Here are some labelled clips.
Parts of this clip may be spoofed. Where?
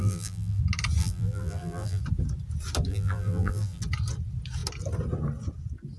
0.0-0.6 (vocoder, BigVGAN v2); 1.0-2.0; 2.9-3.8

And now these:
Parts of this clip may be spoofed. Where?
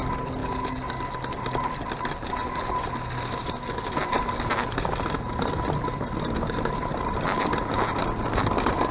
none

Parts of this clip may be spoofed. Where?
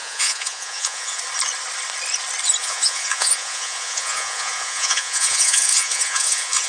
0.0-1.2 (vocoder, Vocos); 2.6-6.7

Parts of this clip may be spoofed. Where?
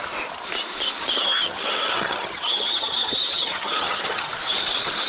1.2-4.3 (vocoder, HiFi-GAN)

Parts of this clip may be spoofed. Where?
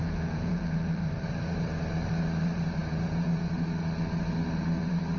0.0-0.6 (vocoder, Vocos); 2.8-3.5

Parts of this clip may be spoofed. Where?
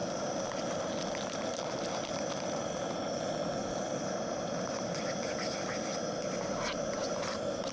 none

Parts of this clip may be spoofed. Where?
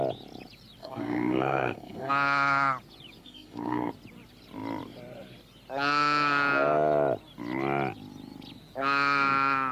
0.8-2.1 (codec, SNAC); 3.2-3.9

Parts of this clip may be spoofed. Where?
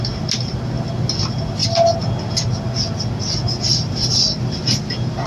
none